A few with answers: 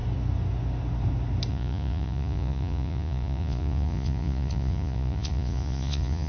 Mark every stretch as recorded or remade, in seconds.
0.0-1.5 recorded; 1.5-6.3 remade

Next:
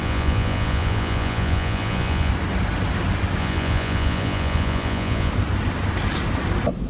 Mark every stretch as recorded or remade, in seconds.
0.0-2.3 remade; 2.3-3.4 recorded; 3.4-5.3 remade; 5.3-6.9 recorded

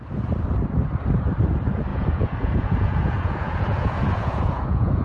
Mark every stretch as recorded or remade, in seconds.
0.0-1.9 recorded; 1.9-5.0 remade

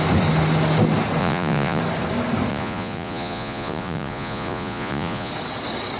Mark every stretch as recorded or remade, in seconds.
0.0-1.2 recorded; 1.2-1.8 remade; 1.8-2.5 recorded; 2.5-5.3 remade; 5.3-6.0 recorded